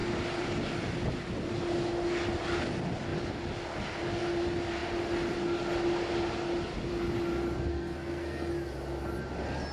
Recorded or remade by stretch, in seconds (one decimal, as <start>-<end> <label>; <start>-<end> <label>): 0.0-7.7 recorded; 7.7-8.5 remade; 8.5-9.7 recorded